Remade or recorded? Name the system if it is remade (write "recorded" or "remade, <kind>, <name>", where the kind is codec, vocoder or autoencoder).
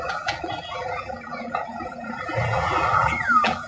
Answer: remade, vocoder, BigVGAN v2